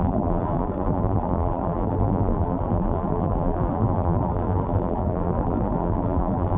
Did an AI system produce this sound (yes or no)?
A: yes